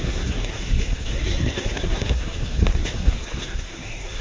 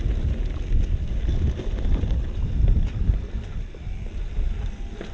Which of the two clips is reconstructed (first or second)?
first